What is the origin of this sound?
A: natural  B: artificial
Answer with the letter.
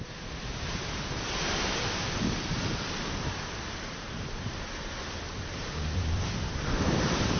B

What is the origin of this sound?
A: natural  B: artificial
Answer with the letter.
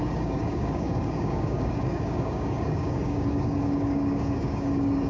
B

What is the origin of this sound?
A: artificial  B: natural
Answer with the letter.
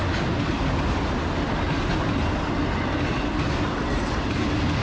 B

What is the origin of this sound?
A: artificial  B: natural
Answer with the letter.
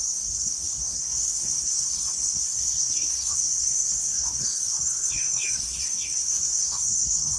A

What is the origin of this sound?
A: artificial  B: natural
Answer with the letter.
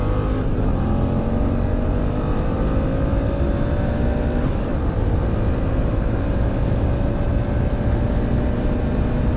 B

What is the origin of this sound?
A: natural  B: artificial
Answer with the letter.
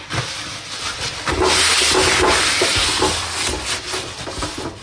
A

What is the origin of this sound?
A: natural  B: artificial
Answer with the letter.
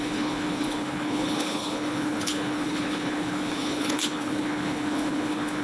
B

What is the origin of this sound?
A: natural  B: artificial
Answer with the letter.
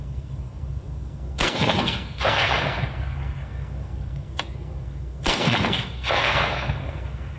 B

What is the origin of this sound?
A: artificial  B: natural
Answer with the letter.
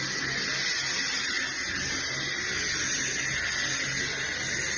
B